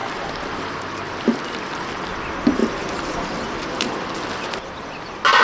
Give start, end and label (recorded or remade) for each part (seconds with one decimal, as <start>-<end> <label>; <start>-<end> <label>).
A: 0.0-2.6 recorded; 2.6-4.7 remade; 4.7-5.4 recorded